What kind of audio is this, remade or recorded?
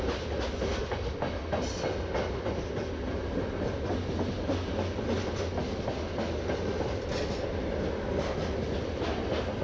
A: recorded